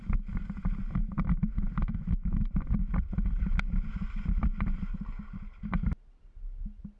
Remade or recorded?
recorded